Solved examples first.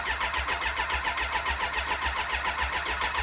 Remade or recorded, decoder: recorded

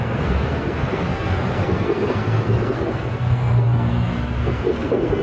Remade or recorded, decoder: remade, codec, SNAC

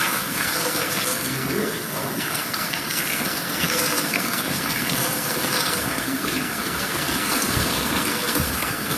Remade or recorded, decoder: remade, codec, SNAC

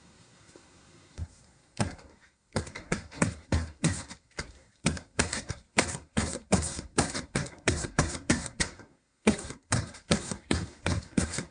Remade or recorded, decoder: remade, codec, SNAC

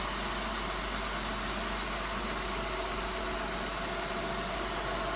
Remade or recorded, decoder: recorded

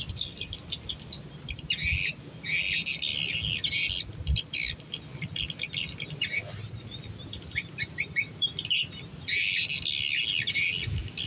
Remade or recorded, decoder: recorded